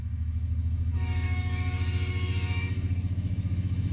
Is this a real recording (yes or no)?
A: no